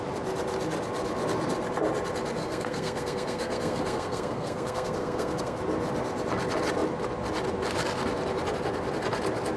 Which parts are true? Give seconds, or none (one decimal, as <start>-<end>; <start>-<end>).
0.0-2.4; 5.6-9.6